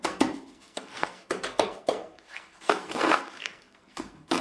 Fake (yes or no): yes